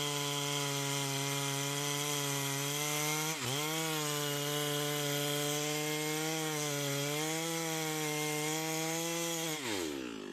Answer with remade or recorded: recorded